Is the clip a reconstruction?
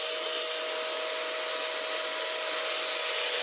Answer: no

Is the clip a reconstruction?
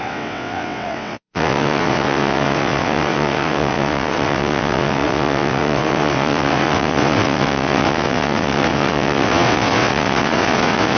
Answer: yes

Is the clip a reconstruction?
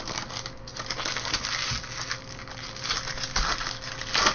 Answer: no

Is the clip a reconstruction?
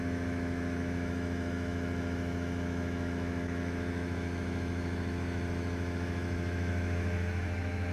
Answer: yes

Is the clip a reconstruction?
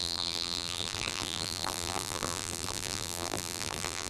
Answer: yes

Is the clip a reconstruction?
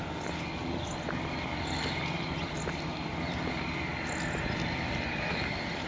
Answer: no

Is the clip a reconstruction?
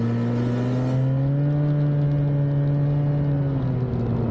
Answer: no